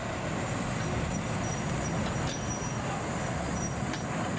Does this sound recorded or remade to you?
recorded